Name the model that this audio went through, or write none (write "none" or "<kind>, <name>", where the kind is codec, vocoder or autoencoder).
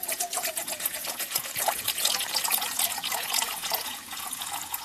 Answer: vocoder, Vocos